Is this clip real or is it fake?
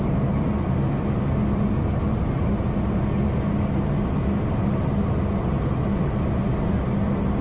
real